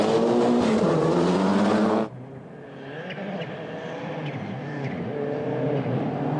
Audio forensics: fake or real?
real